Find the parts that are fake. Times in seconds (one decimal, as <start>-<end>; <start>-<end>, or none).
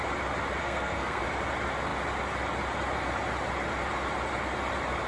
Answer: 0.6-1.2